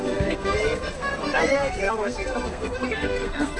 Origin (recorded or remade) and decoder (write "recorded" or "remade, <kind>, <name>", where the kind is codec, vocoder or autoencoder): remade, codec, SNAC